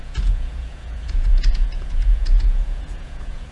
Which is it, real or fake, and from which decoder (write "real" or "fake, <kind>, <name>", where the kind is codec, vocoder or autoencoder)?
fake, vocoder, Vocos